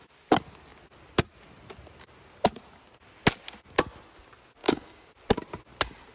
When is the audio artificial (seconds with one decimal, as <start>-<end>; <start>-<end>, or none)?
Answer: 4.6-5.1